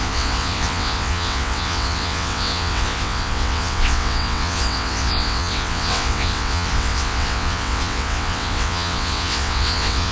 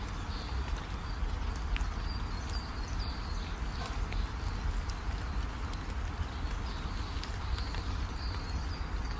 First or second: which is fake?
first